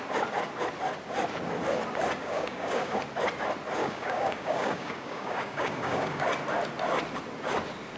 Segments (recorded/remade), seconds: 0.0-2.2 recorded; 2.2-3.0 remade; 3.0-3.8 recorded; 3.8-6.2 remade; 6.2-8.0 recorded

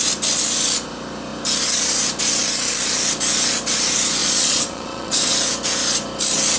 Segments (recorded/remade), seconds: 0.0-4.2 recorded; 4.2-5.3 remade; 5.3-6.6 recorded

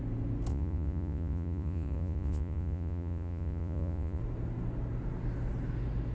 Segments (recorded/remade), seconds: 0.0-0.5 recorded; 0.5-4.2 remade; 4.2-6.1 recorded

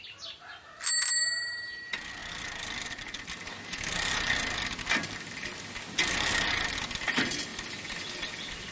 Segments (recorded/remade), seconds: 0.0-8.7 recorded

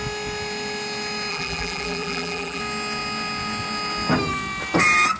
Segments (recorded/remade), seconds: 0.0-1.3 recorded; 1.3-2.6 remade; 2.6-5.2 recorded

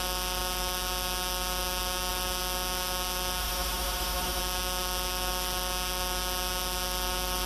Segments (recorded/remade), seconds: 0.0-3.4 recorded; 3.4-4.4 remade; 4.4-7.5 recorded